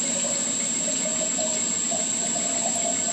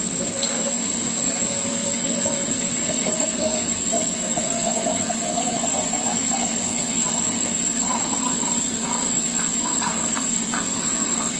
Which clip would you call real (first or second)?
first